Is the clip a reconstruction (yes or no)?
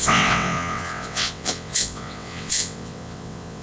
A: yes